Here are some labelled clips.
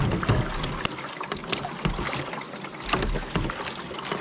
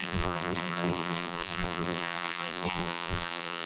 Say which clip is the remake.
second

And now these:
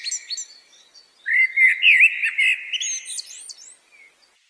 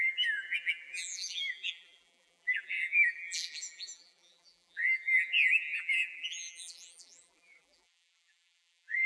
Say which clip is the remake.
second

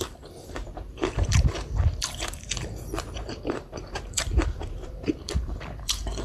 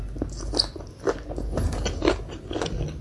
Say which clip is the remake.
first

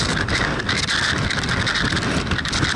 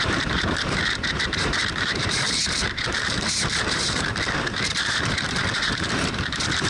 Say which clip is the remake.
second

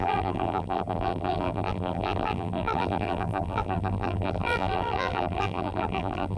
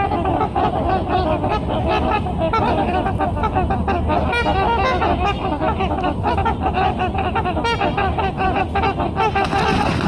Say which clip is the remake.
first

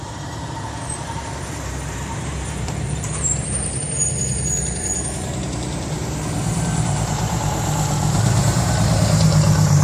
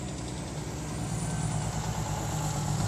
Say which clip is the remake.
first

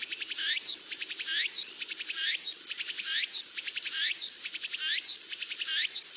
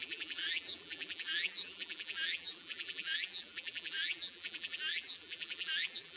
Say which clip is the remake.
second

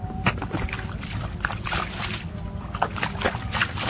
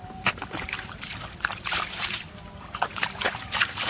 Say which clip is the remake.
second